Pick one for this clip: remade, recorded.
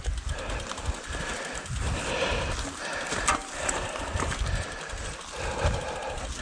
recorded